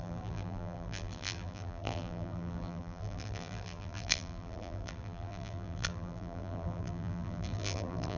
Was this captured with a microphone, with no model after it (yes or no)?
no